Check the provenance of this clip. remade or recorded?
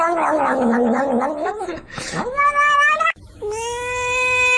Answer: remade